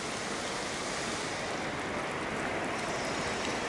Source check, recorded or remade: recorded